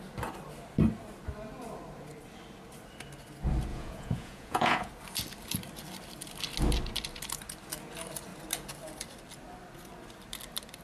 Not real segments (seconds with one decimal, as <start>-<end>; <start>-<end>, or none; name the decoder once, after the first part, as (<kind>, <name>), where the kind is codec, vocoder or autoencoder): 3.7-4.9 (vocoder, Vocos)